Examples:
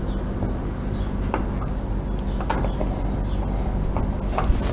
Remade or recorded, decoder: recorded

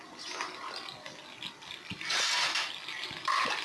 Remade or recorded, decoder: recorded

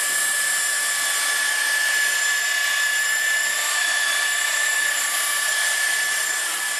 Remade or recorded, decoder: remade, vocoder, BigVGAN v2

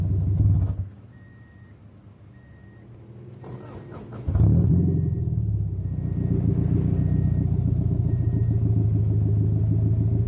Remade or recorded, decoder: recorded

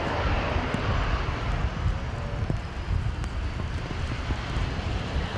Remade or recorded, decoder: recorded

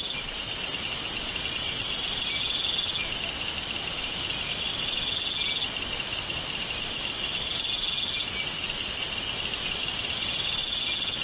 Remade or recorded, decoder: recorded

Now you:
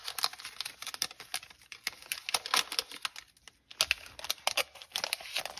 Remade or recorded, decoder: recorded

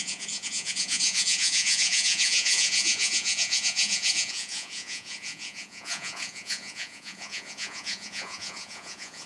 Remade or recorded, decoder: remade, vocoder, Vocos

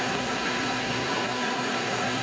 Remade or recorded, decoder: remade, codec, SNAC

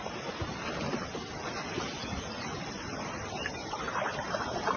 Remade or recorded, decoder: remade, vocoder, BigVGAN v2